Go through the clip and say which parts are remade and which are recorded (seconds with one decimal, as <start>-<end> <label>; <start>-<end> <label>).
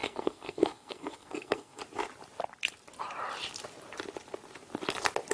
0.0-1.8 remade; 1.8-5.3 recorded